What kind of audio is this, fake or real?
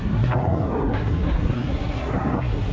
fake